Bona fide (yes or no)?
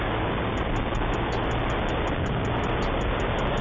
yes